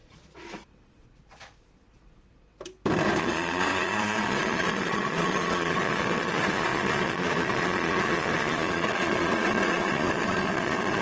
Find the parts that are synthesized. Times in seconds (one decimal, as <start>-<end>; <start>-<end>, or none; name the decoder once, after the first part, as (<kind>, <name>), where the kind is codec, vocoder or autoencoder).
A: 0.0-2.5 (vocoder, Vocos); 3.2-11.0